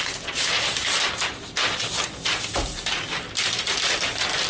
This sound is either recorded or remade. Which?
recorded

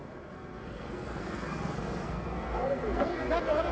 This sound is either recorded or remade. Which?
remade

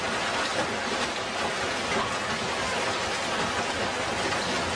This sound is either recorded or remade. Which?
recorded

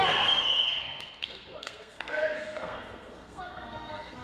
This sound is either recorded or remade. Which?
remade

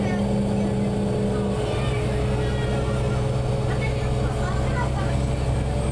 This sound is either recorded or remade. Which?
recorded